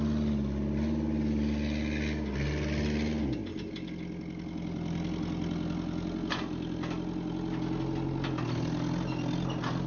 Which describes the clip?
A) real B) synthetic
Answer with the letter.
A